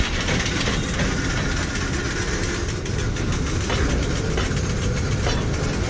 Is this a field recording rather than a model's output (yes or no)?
yes